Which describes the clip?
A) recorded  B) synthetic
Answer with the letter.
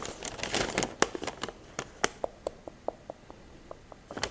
A